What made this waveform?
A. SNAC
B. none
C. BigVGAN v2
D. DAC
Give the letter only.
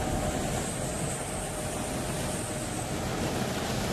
B